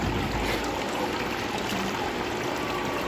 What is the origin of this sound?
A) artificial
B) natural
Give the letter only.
B